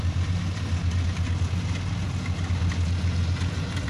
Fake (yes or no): no